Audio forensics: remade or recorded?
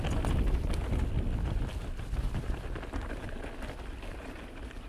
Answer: recorded